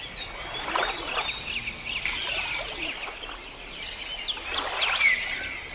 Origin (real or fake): real